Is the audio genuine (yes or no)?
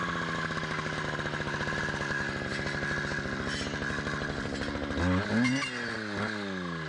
yes